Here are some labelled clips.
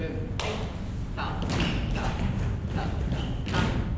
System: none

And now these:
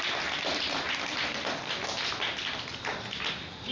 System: none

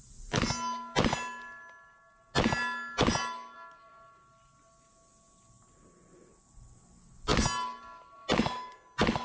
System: none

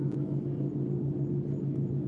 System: none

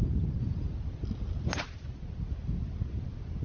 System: none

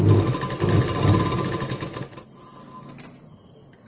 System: none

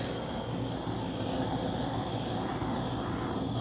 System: none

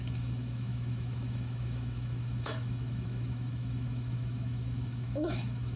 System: autoencoder, DAC-VAE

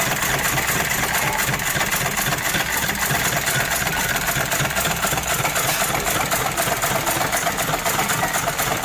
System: none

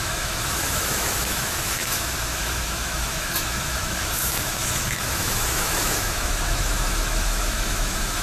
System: autoencoder, DAC-VAE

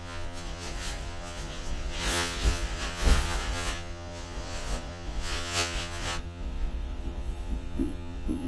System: vocoder, Vocos